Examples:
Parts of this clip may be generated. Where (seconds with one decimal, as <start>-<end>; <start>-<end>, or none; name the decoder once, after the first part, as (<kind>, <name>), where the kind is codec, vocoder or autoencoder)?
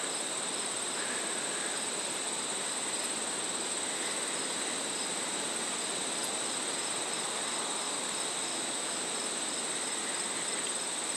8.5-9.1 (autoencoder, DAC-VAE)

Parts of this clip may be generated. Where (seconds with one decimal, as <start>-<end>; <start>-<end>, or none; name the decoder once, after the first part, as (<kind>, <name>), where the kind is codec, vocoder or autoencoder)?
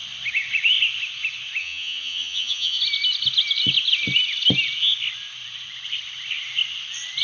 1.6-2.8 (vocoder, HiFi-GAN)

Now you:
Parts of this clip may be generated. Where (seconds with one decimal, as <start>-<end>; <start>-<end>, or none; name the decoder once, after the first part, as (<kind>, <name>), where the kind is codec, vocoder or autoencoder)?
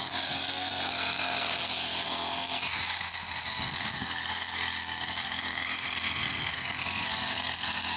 0.0-8.0 (codec, SNAC)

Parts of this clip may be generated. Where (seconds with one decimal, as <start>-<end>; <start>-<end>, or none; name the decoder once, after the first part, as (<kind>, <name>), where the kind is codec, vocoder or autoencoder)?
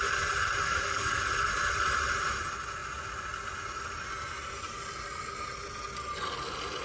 0.6-1.2 (codec, SNAC)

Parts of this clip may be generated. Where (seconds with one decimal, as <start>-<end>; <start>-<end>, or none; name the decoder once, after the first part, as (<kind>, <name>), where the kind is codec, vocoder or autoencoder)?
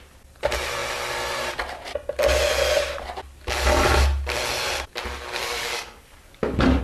5.6-6.8 (codec, DAC)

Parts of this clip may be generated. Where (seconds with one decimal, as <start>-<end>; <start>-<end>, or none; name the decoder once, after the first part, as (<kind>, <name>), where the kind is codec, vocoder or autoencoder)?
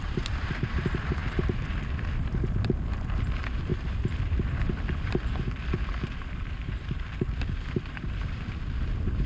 0.0-9.3 (vocoder, BigVGAN v2)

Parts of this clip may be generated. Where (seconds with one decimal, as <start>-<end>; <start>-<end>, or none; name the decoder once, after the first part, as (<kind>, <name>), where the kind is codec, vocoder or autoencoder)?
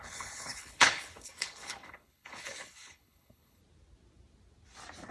0.0-3.6 (codec, HILCodec)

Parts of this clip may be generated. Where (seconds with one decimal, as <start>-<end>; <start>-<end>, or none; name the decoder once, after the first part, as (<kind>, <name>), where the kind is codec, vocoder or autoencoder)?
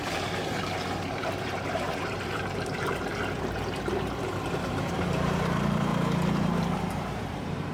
0.0-3.1 (vocoder, BigVGAN v2); 4.7-7.7